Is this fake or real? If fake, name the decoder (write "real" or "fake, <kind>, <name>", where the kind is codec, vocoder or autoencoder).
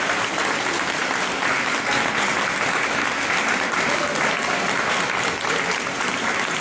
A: real